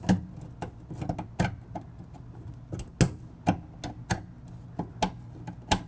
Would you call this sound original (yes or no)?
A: yes